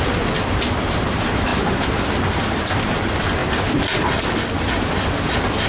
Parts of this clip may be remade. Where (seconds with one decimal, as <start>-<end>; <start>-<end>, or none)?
none